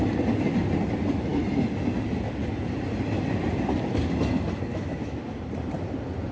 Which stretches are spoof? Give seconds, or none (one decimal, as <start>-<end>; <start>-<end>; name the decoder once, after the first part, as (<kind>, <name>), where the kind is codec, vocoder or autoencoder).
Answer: 4.7-5.4 (autoencoder, DAC-VAE)